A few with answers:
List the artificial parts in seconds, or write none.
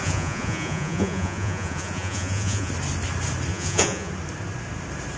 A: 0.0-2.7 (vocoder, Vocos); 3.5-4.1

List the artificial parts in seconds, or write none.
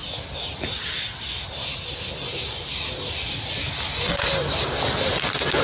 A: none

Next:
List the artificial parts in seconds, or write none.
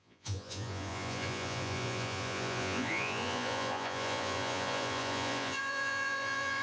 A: 0.0-6.6 (vocoder, Vocos)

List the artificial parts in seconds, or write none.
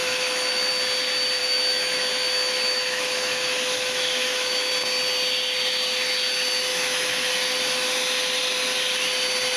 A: 0.0-0.7 (autoencoder, DAC-VAE); 1.4-4.7; 6.7-7.3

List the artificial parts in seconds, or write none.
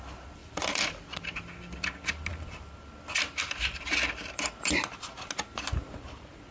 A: 0.4-1.9 (vocoder, BigVGAN v2); 2.3-4.8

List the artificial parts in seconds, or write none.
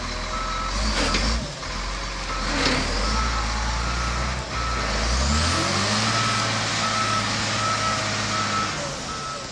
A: 6.7-8.0 (codec, DAC)